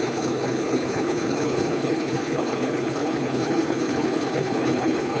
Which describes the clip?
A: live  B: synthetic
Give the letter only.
B